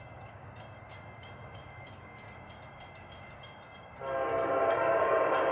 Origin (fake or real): fake